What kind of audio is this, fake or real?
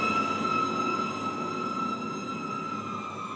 real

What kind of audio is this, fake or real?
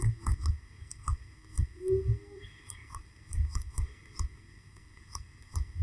fake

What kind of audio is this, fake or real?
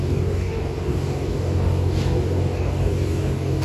fake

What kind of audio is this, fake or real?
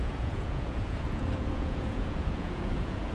fake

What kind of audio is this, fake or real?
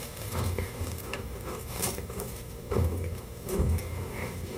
fake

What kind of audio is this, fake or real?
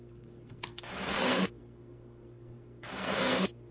fake